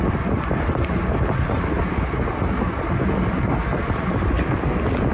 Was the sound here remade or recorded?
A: recorded